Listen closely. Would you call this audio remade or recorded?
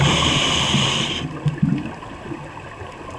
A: recorded